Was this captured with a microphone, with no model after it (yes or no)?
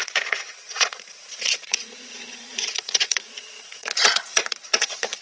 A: no